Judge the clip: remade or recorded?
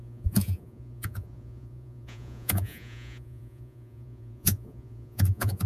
remade